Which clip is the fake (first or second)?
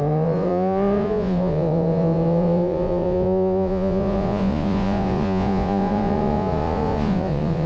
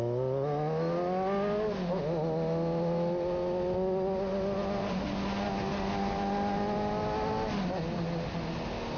first